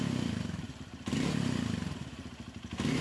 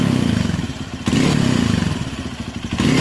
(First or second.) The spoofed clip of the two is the first